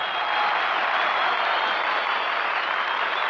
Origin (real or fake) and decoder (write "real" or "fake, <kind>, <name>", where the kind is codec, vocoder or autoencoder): real